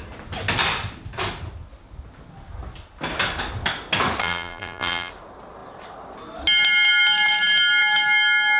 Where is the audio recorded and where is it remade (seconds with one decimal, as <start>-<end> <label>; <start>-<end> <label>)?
0.0-4.2 recorded; 4.2-5.1 remade; 5.1-8.6 recorded

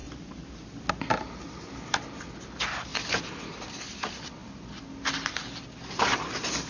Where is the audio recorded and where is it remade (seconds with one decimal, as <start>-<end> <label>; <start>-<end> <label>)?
0.0-6.7 recorded